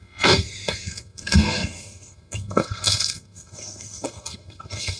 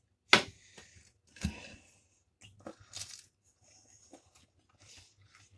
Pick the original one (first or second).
second